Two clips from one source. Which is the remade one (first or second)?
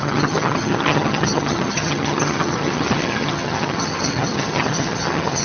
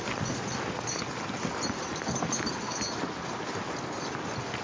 first